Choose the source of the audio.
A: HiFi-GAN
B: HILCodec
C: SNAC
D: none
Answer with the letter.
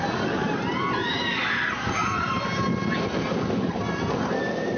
D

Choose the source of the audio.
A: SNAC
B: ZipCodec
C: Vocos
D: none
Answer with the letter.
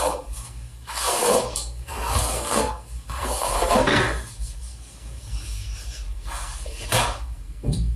A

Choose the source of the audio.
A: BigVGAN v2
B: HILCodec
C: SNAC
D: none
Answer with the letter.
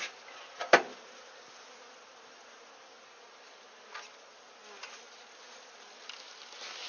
D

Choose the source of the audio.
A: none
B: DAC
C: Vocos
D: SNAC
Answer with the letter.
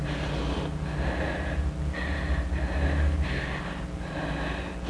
A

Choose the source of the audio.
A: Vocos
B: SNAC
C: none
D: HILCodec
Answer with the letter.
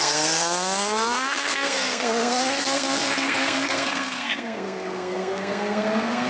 B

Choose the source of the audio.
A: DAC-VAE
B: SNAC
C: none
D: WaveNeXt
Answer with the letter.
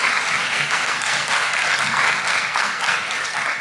B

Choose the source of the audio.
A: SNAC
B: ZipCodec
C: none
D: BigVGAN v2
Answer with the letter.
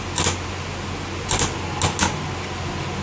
C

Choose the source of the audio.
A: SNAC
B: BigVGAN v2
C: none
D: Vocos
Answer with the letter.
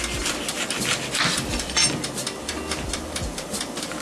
C